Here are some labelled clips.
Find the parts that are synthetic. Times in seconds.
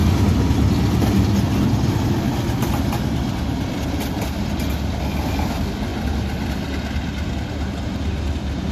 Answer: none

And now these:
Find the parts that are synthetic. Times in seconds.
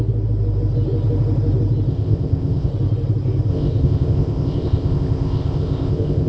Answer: 1.9-2.7 (codec, ZipCodec); 3.5-6.3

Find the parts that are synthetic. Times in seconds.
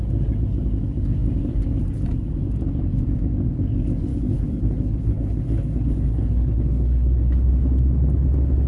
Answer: 4.1-7.5 (codec, HILCodec)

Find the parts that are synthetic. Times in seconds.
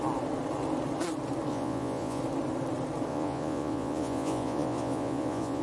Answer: 1.5-2.2 (vocoder, Vocos); 3.1-5.6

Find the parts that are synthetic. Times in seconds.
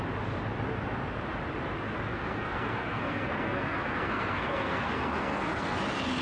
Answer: 2.1-5.8 (codec, SNAC)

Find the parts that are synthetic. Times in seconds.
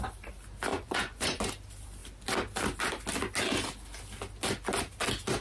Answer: 0.7-1.4 (vocoder, Vocos)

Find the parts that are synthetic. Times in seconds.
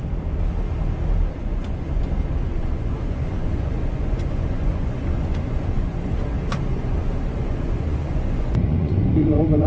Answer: 1.4-2.0 (vocoder, Vocos); 2.5-6.1; 6.7-9.7